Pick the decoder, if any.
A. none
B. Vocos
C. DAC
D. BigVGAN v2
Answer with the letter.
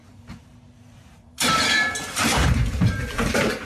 D